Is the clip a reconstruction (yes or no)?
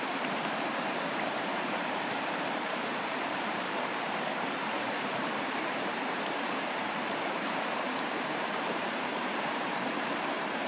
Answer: yes